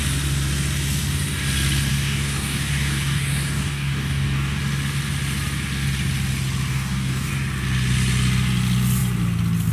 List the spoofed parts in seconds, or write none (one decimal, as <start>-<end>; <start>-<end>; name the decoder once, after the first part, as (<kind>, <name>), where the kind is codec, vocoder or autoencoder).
1.9-4.6 (codec, DAC); 6.7-7.3

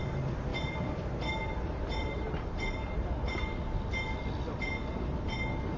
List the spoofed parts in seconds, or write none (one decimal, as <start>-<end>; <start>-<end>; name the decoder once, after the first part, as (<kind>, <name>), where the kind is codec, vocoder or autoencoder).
none

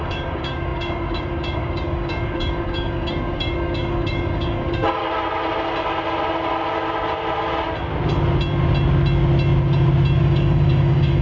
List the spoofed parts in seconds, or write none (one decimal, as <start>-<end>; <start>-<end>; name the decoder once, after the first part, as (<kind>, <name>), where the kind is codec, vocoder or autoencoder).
0.0-5.0 (codec, DAC); 10.2-11.2

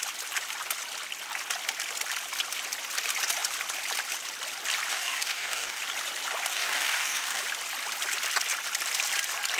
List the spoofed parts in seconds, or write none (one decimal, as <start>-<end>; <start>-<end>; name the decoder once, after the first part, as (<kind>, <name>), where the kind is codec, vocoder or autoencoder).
4.9-5.8 (codec, DAC); 6.5-7.4

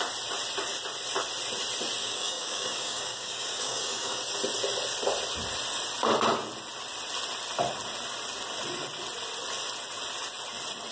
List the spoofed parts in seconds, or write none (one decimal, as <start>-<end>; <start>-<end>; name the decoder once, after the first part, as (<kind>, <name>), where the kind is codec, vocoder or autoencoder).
2.0-4.2 (codec, DAC)

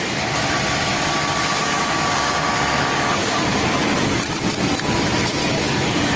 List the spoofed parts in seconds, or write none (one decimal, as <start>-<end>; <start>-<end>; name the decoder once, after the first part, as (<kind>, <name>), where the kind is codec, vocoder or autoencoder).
0.9-3.6 (codec, DAC); 5.4-6.2